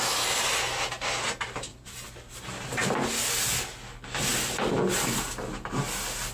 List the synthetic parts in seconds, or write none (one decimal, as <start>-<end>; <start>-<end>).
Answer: none